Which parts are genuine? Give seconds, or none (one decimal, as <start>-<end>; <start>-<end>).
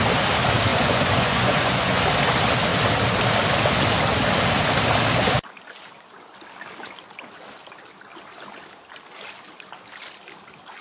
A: 0.0-0.7; 2.0-10.8